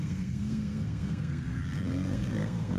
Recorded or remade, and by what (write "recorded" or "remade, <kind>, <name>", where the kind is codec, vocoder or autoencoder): remade, codec, SNAC